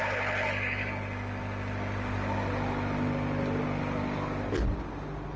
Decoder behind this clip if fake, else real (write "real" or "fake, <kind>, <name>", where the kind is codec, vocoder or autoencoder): real